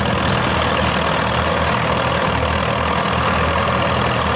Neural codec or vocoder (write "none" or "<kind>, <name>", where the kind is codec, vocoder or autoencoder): none